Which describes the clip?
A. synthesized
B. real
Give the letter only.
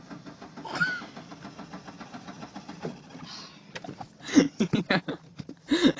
B